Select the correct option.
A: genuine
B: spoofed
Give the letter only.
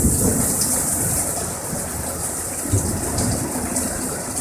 A